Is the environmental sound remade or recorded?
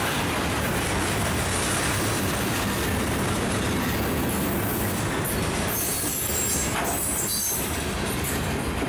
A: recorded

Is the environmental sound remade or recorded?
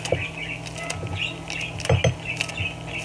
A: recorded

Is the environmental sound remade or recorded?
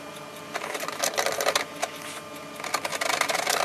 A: recorded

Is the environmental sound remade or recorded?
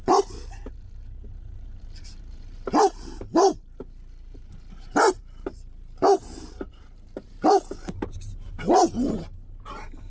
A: remade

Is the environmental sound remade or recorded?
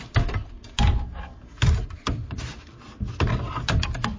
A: recorded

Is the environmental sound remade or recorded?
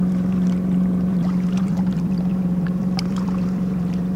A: remade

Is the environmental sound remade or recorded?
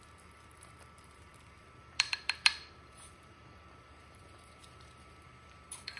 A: remade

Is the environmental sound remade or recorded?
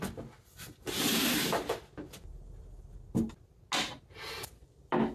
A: recorded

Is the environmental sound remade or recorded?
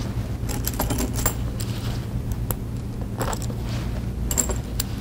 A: recorded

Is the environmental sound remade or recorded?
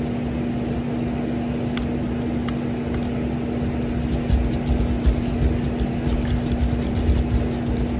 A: recorded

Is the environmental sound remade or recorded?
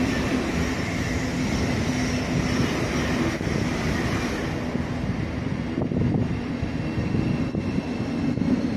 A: recorded